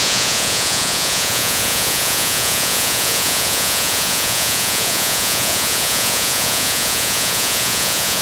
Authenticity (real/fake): fake